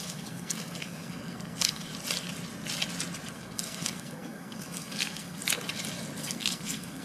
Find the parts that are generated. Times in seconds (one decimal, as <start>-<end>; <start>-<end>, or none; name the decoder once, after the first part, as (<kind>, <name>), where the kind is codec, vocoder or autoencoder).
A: 0.0-1.9 (codec, SNAC); 3.3-5.4; 6.2-7.0